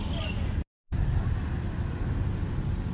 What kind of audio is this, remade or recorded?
recorded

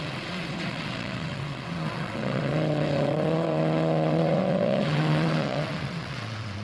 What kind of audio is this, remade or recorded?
remade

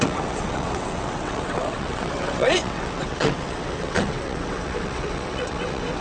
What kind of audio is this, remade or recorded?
remade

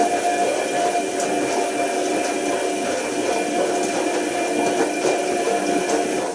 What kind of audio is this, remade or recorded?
recorded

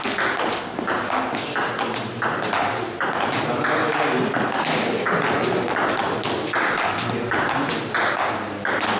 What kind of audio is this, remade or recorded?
recorded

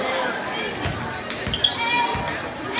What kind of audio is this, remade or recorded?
recorded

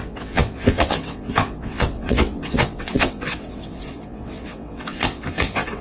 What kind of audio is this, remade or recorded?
remade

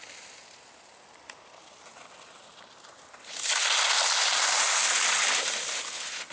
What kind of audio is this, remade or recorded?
recorded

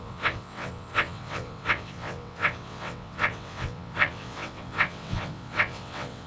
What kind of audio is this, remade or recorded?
remade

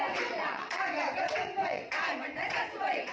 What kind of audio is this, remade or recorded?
remade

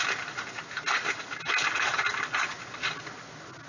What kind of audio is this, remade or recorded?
recorded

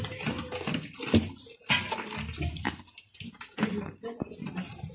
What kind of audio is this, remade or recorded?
recorded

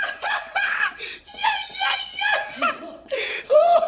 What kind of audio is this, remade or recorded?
remade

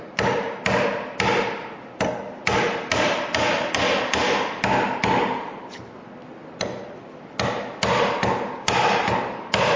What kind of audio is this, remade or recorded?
recorded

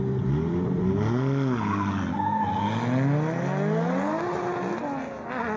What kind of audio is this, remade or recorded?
recorded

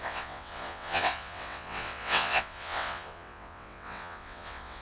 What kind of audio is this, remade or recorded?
remade